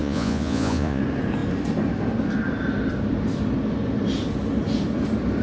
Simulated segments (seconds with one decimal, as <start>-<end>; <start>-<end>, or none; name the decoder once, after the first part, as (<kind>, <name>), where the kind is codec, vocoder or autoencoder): 0.0-1.0 (vocoder, Vocos)